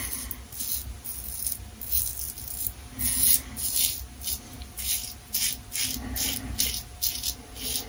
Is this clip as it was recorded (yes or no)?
yes